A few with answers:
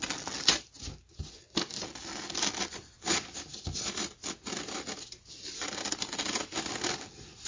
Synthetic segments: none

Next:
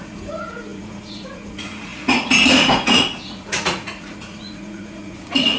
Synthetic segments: 0.0-5.6 (vocoder, Vocos)

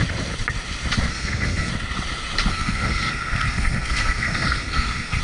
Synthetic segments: 1.1-1.7 (codec, SNAC); 2.5-5.2

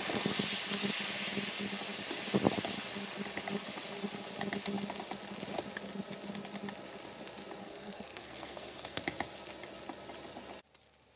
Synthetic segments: 7.6-9.0 (codec, SNAC)

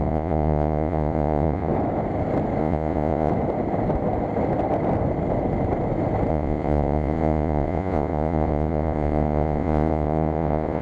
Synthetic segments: 0.0-1.7 (vocoder, Vocos); 2.6-3.3; 6.3-10.8

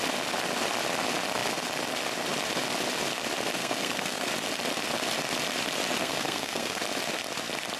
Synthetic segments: 3.6-4.3 (codec, SNAC); 6.0-6.8